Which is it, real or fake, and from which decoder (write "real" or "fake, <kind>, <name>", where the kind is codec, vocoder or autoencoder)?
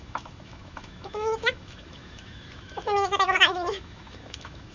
fake, autoencoder, DAC-VAE